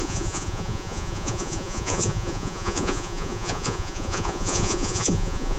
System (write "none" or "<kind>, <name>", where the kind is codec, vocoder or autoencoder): vocoder, Vocos